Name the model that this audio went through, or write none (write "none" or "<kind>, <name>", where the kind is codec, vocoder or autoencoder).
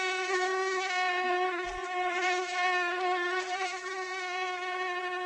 none